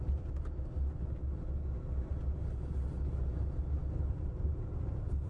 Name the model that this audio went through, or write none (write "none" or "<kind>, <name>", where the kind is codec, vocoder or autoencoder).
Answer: none